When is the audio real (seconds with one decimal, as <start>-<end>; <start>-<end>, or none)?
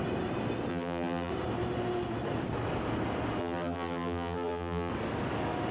0.0-0.7; 1.3-3.4; 4.9-5.7